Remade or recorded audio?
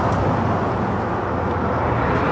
recorded